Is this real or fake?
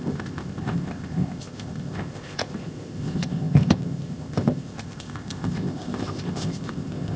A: fake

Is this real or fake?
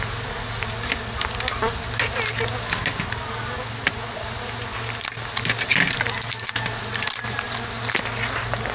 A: real